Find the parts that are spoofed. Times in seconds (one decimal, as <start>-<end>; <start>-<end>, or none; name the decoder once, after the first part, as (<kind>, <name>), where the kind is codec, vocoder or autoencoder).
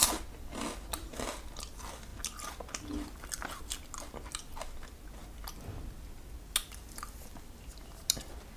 none